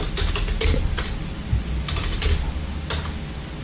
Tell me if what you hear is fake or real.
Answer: real